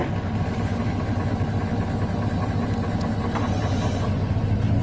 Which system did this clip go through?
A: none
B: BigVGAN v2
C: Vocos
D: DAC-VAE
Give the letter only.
A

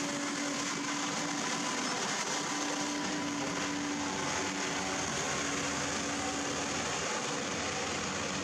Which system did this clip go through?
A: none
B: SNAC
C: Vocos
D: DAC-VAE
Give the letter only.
A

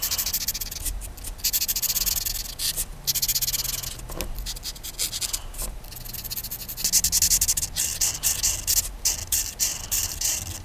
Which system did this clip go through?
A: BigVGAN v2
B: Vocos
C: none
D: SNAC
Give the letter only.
C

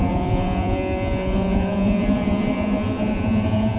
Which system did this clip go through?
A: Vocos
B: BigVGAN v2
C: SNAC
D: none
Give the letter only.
A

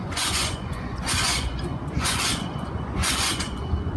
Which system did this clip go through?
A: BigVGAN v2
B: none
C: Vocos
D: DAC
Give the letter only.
C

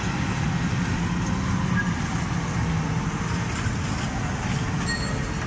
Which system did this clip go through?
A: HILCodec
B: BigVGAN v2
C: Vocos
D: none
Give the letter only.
D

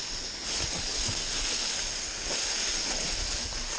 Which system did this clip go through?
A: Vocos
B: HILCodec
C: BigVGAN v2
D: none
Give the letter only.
D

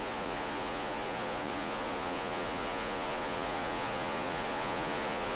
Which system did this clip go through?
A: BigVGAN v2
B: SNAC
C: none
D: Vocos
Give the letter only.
D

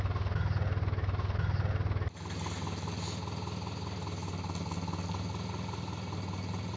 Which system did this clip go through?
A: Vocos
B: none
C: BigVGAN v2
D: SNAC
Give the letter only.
B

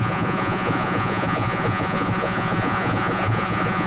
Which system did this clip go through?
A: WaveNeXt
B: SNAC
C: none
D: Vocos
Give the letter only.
D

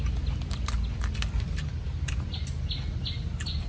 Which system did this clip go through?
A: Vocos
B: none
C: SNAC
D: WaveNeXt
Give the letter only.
B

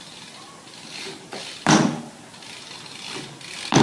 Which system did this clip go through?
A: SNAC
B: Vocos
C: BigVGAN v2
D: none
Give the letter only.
D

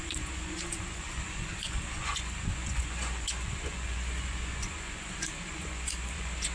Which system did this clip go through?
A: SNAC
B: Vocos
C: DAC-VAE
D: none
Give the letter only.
B